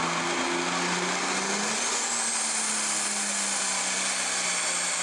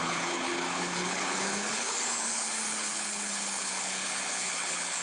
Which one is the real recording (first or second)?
first